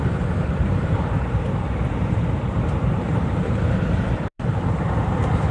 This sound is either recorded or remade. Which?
remade